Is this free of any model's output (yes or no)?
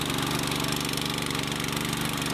yes